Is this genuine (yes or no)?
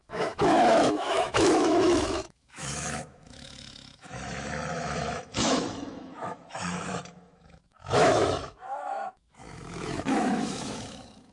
no